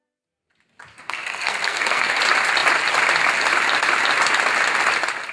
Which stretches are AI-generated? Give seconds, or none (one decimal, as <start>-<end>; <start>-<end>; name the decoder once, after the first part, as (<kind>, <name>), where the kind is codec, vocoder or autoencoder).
0.9-2.2 (codec, SNAC)